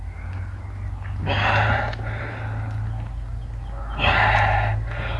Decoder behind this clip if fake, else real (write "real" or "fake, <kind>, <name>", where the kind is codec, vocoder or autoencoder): real